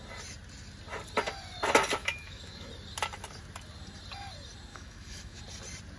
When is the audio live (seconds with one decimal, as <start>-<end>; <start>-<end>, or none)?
0.0-2.0; 2.7-4.7; 5.4-6.0